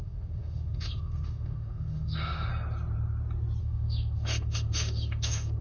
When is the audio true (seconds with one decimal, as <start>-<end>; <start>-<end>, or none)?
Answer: 2.5-3.6